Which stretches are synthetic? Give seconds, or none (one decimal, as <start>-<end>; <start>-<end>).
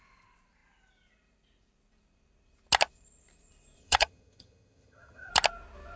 3.8-5.3